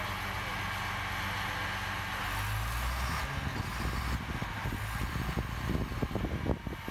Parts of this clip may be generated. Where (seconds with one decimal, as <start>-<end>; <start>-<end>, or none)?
none